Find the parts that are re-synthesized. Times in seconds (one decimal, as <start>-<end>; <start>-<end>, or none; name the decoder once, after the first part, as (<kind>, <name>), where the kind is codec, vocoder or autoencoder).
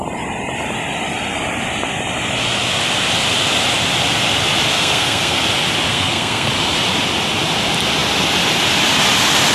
4.7-5.4 (codec, SNAC); 5.9-6.5